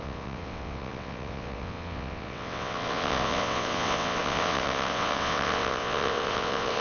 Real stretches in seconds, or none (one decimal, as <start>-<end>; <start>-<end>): none